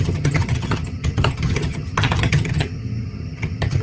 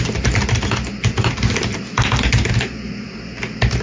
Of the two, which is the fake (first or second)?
first